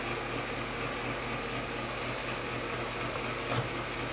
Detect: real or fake real